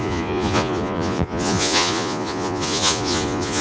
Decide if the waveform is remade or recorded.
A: remade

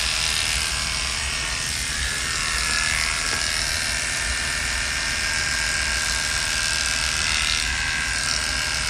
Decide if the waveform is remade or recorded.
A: recorded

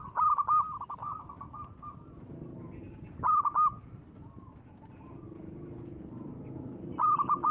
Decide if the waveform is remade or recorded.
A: recorded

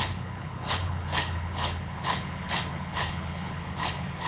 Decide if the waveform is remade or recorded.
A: remade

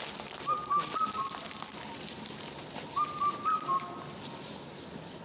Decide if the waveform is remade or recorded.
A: recorded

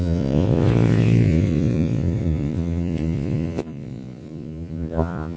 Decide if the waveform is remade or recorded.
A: remade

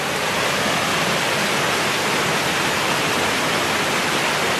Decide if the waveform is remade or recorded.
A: recorded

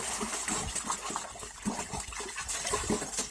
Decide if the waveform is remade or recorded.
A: recorded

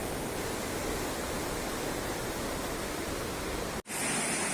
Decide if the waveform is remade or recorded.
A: recorded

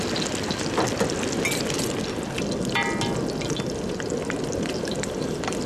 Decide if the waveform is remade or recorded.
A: recorded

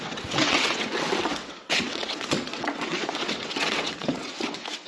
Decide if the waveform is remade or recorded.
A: remade